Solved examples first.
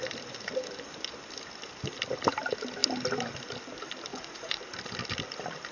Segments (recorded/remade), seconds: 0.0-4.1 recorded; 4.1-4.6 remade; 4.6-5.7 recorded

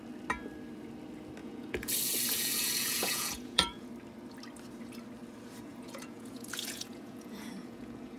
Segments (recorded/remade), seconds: 0.0-1.4 recorded; 1.4-3.9 remade; 3.9-5.7 recorded; 5.7-8.2 remade

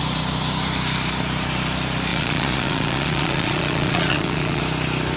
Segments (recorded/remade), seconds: 0.0-2.1 recorded; 2.1-4.6 remade; 4.6-5.2 recorded

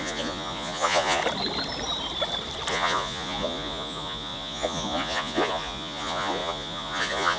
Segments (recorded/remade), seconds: 0.0-1.2 remade; 1.2-2.7 recorded; 2.7-7.4 remade